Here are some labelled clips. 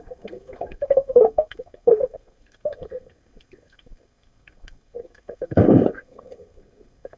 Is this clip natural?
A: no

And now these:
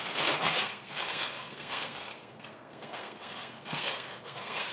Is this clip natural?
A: no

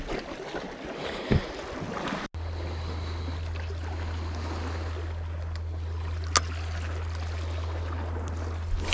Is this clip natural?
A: yes